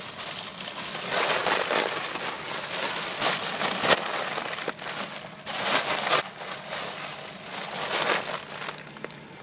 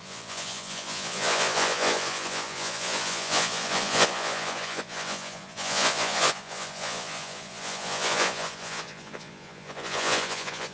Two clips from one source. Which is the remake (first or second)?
second